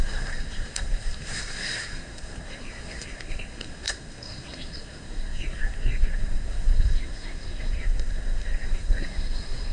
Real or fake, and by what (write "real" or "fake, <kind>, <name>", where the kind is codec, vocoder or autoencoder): fake, codec, SNAC